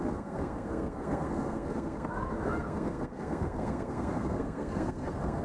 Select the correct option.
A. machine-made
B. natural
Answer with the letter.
A